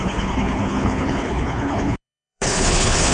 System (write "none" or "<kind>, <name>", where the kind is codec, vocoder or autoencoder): codec, HILCodec